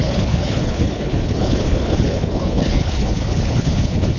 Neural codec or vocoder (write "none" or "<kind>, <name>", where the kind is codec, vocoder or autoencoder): codec, HILCodec